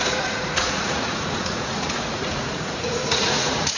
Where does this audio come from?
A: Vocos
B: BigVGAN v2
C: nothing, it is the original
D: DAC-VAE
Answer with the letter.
A